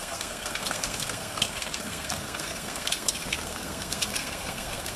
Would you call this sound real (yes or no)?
no